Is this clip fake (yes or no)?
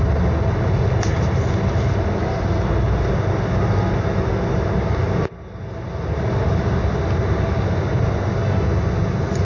no